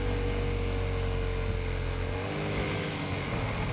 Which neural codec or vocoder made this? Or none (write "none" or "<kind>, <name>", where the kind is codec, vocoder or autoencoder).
none